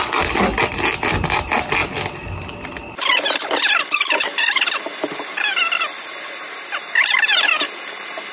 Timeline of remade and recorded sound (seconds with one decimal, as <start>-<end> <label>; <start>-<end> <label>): 0.0-8.3 recorded